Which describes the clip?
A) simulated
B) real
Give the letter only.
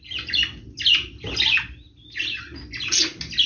B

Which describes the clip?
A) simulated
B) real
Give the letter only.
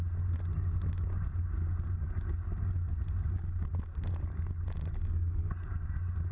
B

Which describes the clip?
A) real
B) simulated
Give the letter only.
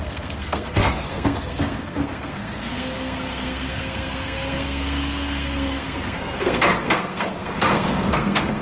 B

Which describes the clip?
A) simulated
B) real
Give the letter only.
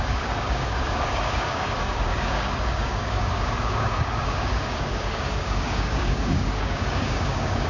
A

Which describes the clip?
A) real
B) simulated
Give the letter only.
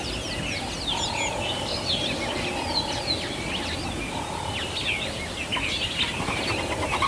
A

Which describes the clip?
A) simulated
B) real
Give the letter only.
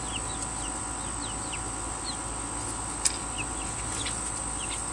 B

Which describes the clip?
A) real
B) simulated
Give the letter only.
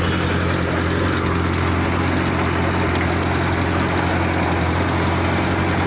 A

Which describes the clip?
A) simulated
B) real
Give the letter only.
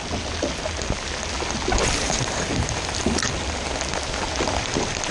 B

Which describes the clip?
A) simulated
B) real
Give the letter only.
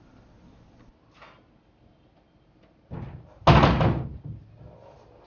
B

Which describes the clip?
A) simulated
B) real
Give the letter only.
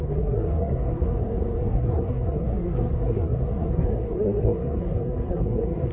A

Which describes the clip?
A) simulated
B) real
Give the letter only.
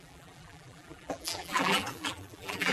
A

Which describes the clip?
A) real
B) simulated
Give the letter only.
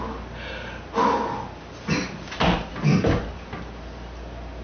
A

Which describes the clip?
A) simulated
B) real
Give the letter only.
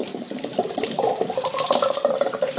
A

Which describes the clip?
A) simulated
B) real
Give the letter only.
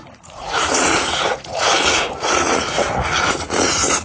A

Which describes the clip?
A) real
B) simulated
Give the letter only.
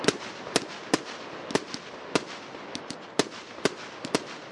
A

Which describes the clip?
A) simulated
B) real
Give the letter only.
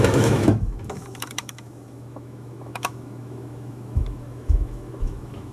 A